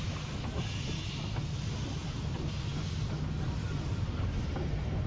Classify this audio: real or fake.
real